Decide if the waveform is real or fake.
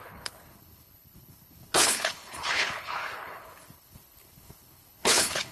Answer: fake